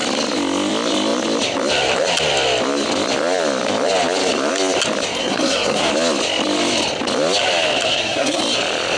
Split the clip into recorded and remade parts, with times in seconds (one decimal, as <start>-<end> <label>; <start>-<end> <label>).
0.0-5.2 recorded; 5.2-5.9 remade; 5.9-7.9 recorded; 7.9-8.4 remade; 8.4-9.0 recorded